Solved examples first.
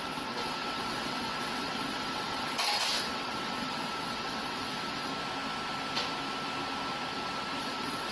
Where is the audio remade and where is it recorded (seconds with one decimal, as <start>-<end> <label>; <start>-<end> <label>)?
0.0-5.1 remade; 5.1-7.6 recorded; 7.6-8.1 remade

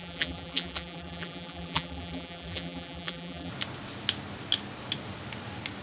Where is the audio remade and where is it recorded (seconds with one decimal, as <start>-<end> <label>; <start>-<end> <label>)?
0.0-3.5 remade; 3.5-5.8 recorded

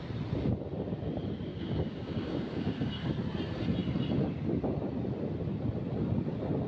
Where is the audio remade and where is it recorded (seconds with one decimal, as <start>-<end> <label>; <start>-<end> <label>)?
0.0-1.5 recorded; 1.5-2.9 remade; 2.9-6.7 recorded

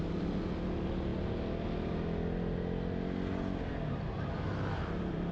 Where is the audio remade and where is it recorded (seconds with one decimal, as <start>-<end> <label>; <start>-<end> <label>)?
0.0-5.3 recorded

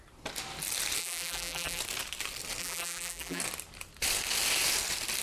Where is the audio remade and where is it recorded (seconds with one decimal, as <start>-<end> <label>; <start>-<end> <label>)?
0.0-1.0 recorded; 1.0-1.8 remade; 1.8-2.6 recorded; 2.6-3.4 remade; 3.4-5.2 recorded